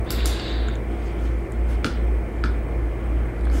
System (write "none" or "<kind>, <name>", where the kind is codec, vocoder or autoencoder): none